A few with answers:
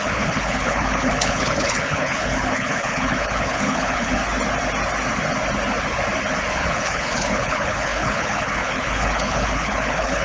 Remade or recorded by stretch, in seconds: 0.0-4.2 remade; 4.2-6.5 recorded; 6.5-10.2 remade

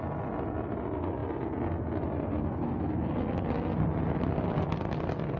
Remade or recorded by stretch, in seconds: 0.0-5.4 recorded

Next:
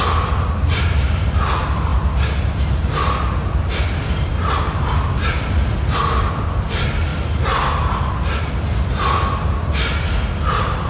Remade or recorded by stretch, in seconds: 0.0-10.9 recorded

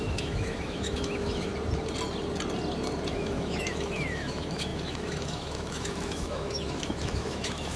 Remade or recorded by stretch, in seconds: 0.0-1.5 remade; 1.5-3.1 recorded; 3.1-7.8 remade

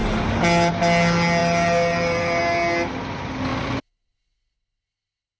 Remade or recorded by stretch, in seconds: 0.0-1.4 recorded; 1.4-2.4 remade; 2.4-5.4 recorded